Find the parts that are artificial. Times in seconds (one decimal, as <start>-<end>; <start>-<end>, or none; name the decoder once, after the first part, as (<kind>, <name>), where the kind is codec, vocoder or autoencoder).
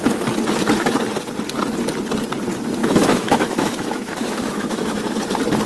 2.8-5.0 (autoencoder, DAC-VAE)